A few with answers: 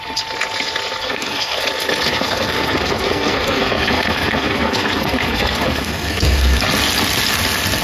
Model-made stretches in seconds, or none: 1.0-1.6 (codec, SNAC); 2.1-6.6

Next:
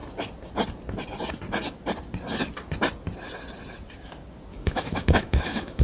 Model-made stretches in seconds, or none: 4.5-5.8 (autoencoder, DAC-VAE)

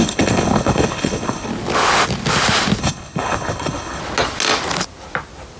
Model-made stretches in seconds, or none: 0.0-1.5 (codec, HILCodec); 2.8-4.0

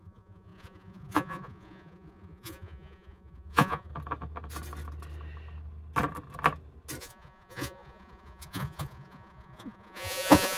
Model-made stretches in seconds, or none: 0.0-3.9 (vocoder, Vocos); 7.0-10.6

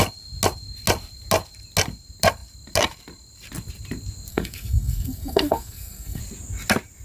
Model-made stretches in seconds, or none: 4.3-6.2 (codec, SNAC)